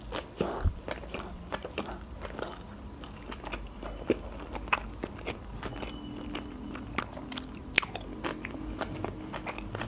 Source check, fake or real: real